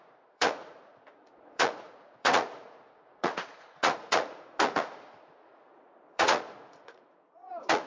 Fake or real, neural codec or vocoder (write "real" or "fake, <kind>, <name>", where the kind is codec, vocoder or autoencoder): fake, vocoder, Vocos